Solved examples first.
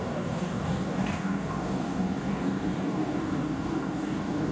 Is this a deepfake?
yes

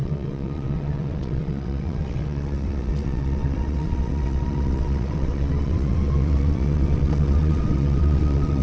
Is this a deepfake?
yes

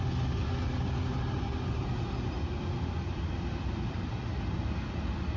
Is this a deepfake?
no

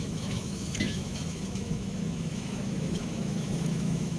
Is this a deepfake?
yes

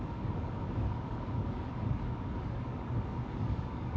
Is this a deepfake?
yes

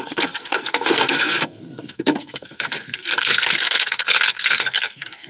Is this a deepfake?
yes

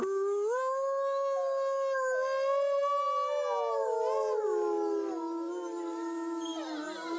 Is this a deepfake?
no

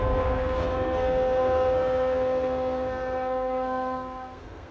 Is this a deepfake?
yes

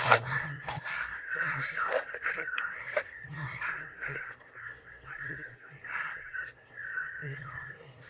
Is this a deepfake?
yes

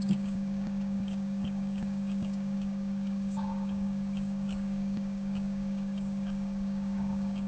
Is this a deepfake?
yes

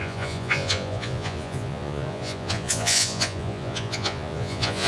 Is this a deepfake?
yes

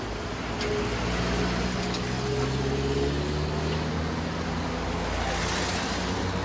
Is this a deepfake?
no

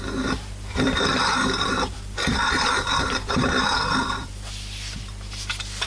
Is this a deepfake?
yes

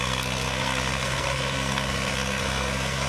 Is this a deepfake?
yes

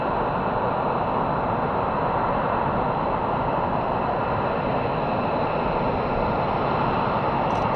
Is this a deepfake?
no